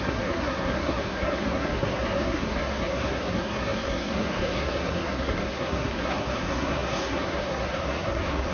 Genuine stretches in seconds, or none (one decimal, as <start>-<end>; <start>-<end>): none